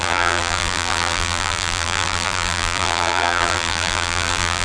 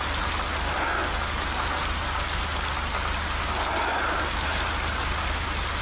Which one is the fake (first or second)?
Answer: first